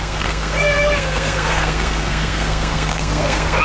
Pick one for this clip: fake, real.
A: fake